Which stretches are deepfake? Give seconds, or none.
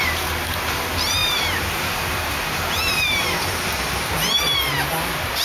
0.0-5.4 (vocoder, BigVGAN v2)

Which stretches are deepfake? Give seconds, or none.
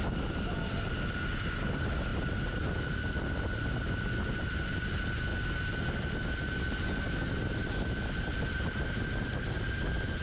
none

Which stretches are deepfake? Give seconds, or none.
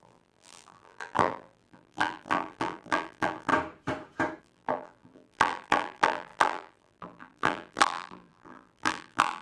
0.0-3.5 (vocoder, BigVGAN v2); 4.4-9.4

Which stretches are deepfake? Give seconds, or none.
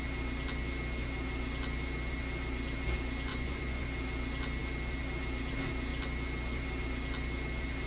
3.3-3.8 (vocoder, Vocos)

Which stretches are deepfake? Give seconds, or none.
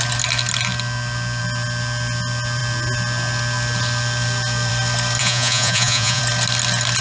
5.2-6.2 (vocoder, Vocos)